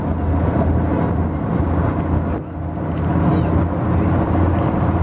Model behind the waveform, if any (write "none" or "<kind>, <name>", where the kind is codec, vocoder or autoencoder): none